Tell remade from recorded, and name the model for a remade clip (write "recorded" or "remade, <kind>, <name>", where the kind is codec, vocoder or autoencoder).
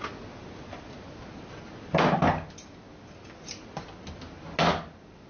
recorded